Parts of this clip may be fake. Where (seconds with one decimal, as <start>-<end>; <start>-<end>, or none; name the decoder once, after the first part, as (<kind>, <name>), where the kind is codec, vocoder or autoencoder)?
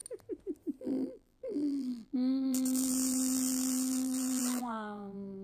0.8-5.4 (vocoder, BigVGAN v2)